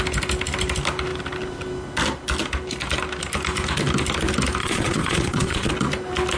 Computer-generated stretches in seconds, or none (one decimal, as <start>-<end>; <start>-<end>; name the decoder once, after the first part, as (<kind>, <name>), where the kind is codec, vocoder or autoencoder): 4.6-5.7 (vocoder, Vocos)